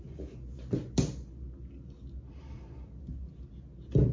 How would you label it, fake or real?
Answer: real